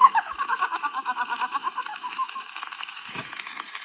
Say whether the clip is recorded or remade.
remade